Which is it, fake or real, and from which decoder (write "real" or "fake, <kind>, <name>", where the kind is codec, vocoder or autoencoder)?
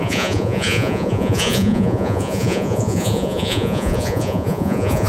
fake, vocoder, Vocos